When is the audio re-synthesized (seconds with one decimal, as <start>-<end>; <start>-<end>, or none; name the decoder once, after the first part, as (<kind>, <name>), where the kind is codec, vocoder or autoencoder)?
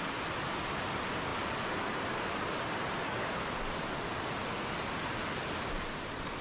none